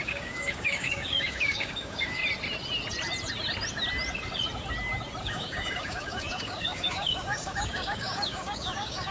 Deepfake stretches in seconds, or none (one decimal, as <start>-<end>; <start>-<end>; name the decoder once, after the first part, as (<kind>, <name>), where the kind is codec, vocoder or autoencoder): 0.0-2.2 (codec, DAC); 5.2-9.1